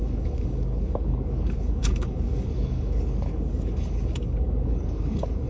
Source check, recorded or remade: remade